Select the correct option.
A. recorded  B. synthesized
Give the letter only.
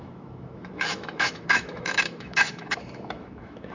B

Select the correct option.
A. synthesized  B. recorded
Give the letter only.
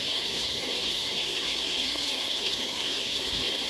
A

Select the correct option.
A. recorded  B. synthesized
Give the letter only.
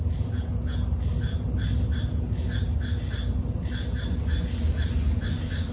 A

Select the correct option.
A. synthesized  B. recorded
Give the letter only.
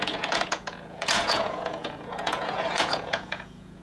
A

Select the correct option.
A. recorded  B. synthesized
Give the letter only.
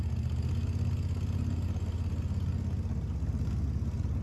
A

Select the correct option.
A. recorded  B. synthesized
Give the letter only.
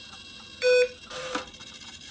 B